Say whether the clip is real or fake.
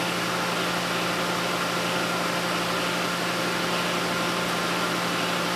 real